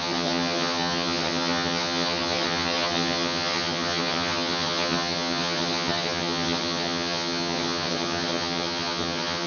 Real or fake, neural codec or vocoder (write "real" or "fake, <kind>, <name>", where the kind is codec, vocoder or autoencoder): fake, vocoder, HiFi-GAN